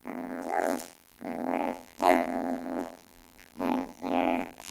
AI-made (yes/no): yes